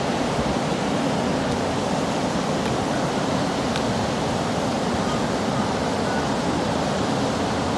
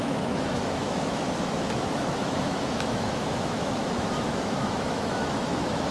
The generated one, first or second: second